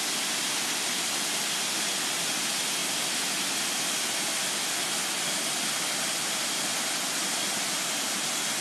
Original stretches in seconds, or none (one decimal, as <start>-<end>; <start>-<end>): 0.0-8.6